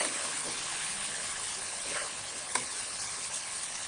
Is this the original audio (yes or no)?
no